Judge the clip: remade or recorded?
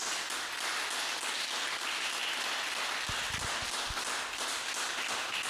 recorded